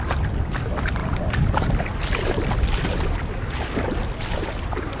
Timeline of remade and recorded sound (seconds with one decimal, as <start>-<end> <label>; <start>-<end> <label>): 0.0-5.0 recorded